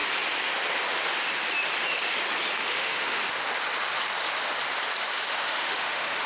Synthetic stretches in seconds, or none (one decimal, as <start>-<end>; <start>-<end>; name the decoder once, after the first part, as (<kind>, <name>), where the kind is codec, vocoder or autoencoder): 2.6-3.2 (autoencoder, DAC-VAE); 5.3-6.3